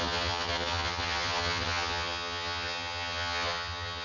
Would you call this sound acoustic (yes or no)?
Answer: no